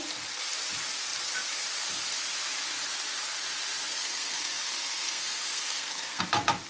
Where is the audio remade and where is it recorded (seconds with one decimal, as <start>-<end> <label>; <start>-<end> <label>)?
0.0-3.9 recorded; 3.9-6.2 remade; 6.2-6.7 recorded